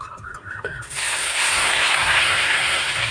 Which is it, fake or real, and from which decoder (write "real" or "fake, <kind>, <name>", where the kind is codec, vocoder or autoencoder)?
fake, codec, SNAC